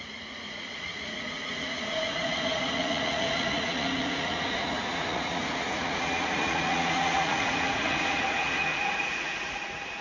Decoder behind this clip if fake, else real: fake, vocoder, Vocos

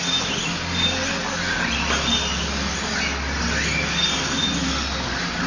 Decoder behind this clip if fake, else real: real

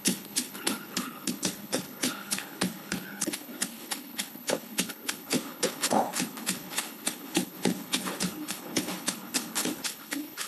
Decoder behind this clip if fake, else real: fake, codec, HILCodec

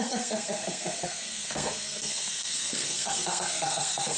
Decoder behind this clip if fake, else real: fake, codec, SNAC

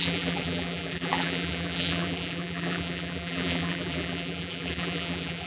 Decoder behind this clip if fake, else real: fake, vocoder, BigVGAN v2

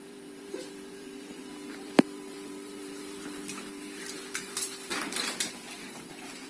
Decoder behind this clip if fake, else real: fake, vocoder, BigVGAN v2